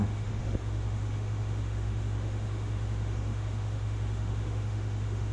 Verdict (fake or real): fake